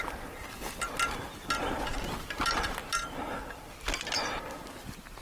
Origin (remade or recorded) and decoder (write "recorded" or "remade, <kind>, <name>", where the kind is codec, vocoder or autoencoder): recorded